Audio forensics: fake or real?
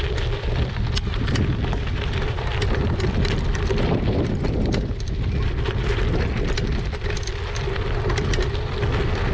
real